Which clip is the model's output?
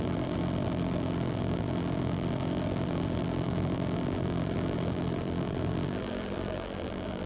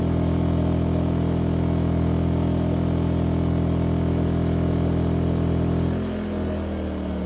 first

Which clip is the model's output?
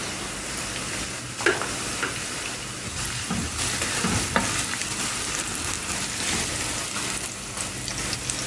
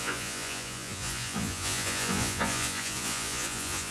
second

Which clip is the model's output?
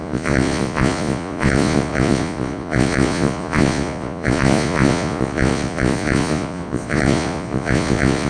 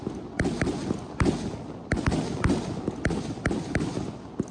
first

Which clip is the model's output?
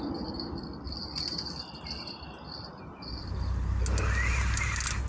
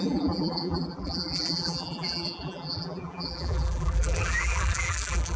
second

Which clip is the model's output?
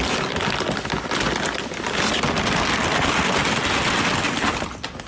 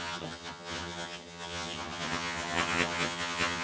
second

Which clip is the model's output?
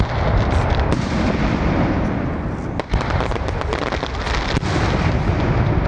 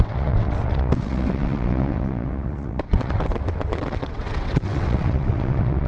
second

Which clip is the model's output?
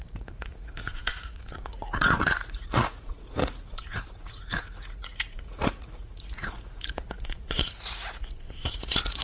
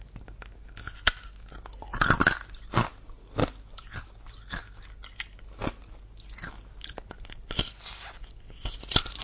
first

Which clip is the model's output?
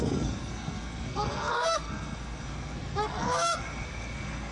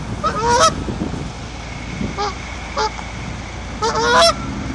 first